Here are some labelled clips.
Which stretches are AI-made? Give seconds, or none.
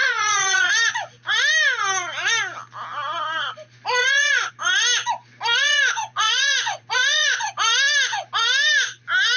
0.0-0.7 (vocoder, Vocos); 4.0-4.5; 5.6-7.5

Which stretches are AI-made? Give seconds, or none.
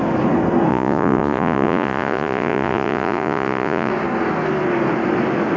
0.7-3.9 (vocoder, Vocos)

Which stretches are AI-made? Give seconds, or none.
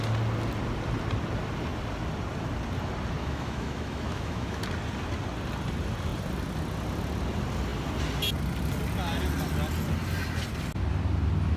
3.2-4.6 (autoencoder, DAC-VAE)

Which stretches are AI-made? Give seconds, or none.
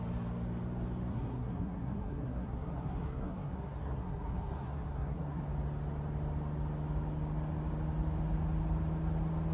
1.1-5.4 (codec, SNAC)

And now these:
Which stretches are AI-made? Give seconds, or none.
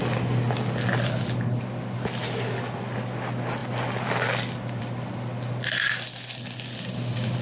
none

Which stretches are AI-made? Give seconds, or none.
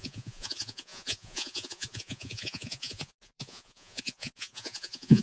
0.0-5.2 (vocoder, Vocos)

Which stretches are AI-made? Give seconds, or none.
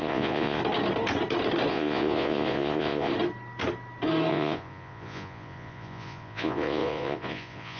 0.0-0.6 (vocoder, Vocos); 1.7-3.1; 4.3-7.8